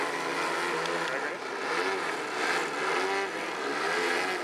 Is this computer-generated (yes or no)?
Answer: no